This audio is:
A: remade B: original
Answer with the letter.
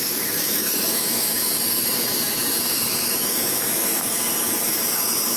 A